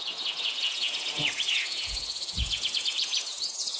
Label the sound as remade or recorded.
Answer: remade